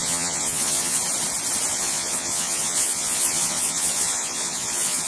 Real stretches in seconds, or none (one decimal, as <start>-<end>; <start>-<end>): 1.0-1.7